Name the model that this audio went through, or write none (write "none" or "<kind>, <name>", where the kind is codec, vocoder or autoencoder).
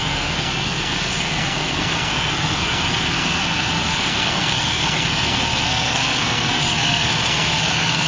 codec, SNAC